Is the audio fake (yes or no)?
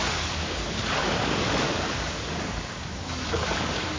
yes